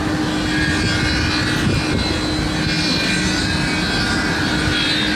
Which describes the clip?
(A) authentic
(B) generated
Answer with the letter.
A